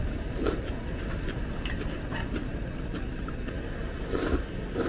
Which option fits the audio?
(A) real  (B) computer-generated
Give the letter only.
A